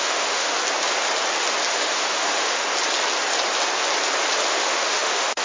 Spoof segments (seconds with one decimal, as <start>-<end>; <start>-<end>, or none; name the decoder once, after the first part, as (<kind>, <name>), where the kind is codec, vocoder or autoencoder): 0.0-0.6 (autoencoder, DAC-VAE); 1.7-2.6; 4.5-5.4